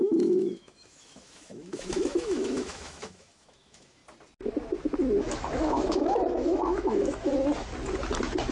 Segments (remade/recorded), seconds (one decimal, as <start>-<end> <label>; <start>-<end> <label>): 0.0-4.0 remade; 4.0-5.2 recorded; 5.2-7.3 remade; 7.3-8.5 recorded